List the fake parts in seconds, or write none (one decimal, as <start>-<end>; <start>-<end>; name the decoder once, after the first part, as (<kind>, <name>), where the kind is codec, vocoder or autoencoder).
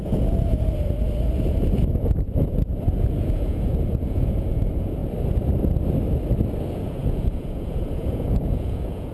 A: 0.0-0.5 (vocoder, Vocos); 1.6-5.0; 6.7-9.1